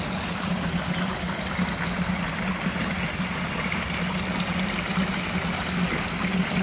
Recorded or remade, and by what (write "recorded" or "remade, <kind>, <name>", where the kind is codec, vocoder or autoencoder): recorded